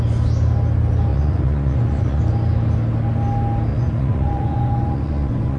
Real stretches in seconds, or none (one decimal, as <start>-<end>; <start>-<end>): 0.0-1.1; 2.2-3.7

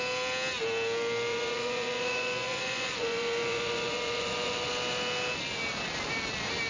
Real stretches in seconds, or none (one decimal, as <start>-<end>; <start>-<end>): 0.0-1.3; 4.7-6.7

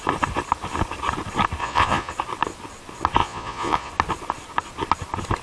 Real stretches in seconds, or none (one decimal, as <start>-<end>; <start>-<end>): 0.0-1.6; 2.1-3.2; 3.9-5.4

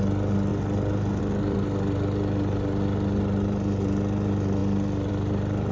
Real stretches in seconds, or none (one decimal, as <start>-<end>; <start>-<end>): 0.0-5.7

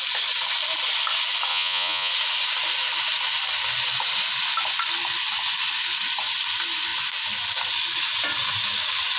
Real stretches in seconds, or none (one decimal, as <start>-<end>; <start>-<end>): 0.0-1.5; 2.1-9.2

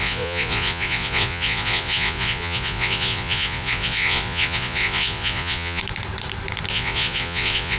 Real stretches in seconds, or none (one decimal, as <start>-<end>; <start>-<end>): 5.8-6.7

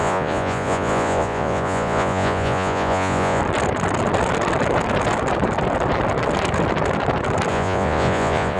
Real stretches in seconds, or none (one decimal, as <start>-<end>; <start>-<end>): 3.4-7.5

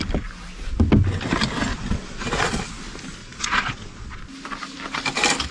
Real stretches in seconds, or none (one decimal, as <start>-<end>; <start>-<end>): 0.0-1.7; 2.7-3.2; 4.2-5.5